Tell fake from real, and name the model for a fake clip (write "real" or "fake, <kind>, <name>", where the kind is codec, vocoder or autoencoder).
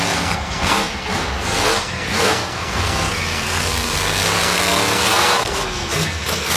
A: fake, codec, SNAC